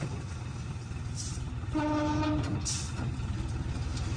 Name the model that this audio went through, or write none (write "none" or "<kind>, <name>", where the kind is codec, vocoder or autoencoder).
none